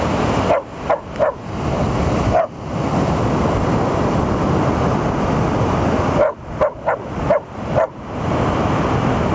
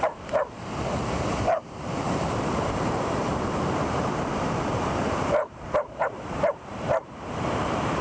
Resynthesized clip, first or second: second